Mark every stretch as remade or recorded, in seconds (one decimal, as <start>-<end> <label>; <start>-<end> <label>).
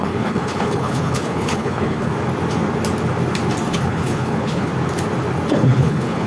0.0-2.1 remade; 2.1-3.7 recorded; 3.7-4.7 remade; 4.7-5.5 recorded; 5.5-6.3 remade